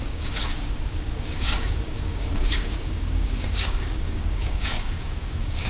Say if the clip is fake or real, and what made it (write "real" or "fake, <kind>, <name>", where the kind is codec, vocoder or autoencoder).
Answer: fake, codec, DAC